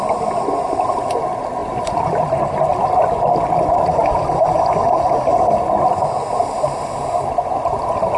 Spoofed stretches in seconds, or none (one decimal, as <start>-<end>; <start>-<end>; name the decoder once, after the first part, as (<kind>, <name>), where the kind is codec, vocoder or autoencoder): none